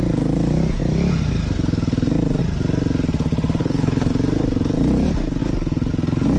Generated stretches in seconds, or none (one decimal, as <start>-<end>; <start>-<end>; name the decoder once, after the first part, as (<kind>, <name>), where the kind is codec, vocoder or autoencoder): 3.6-4.1 (codec, HILCodec)